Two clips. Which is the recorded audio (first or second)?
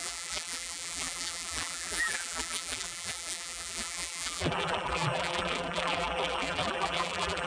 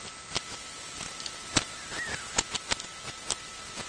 second